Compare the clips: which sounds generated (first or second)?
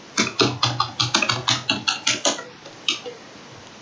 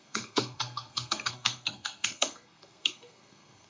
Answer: second